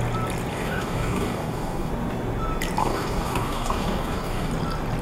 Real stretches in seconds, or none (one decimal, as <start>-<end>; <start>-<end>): 0.0-0.5; 1.9-2.8; 4.5-5.0